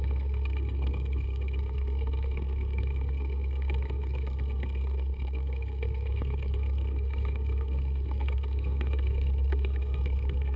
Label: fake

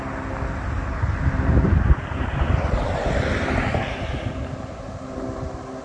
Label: real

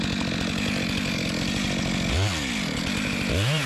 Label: real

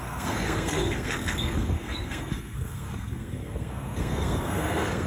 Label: fake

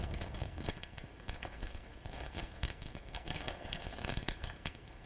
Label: fake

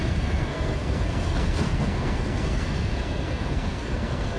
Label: fake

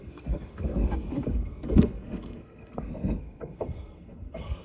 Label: fake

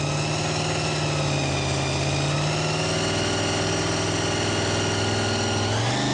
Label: real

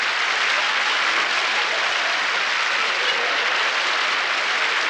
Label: real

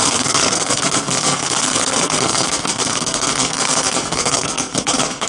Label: fake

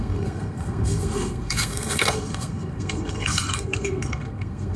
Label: fake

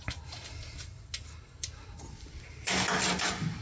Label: real